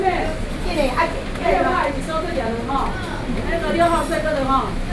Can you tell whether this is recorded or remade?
recorded